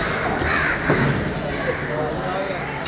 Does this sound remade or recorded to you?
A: recorded